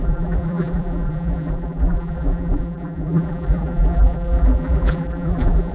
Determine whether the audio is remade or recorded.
remade